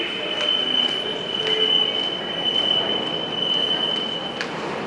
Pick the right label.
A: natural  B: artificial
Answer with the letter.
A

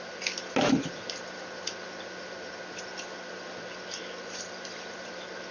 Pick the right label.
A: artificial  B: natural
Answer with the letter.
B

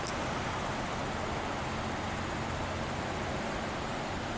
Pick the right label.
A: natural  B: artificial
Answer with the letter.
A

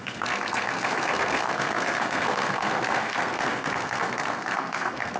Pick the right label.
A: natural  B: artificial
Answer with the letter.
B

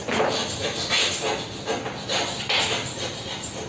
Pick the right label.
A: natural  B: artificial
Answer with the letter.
A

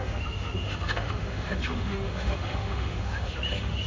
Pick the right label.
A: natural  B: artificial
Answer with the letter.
B